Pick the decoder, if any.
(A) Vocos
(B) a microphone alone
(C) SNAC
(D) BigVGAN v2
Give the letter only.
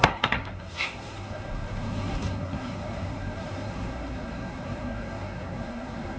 C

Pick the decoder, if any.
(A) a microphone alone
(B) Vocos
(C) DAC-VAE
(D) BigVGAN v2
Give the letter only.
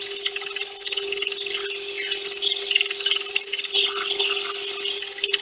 A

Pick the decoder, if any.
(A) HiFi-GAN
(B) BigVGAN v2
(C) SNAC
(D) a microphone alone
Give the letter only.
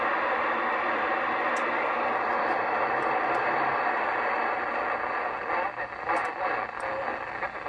B